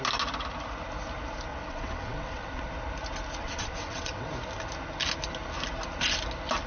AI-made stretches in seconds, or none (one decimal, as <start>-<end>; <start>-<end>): 1.5-2.7; 3.4-4.3